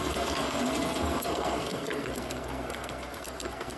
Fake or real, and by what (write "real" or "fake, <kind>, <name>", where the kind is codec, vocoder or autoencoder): fake, codec, SNAC